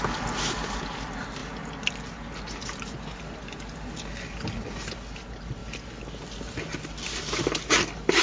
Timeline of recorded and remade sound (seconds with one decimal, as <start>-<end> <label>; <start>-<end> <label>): 0.0-8.2 recorded